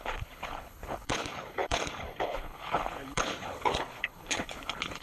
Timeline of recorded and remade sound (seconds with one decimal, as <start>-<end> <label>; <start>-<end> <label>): 0.0-5.0 remade